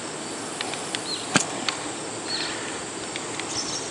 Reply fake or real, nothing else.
real